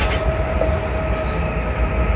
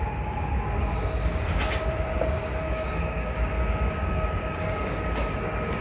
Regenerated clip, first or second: second